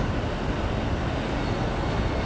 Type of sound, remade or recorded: recorded